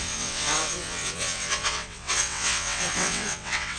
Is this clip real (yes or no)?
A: no